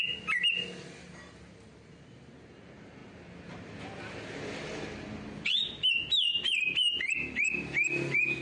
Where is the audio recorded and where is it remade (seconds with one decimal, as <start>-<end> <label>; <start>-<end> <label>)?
0.0-8.4 recorded